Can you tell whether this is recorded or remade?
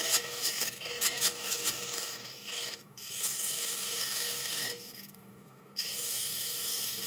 remade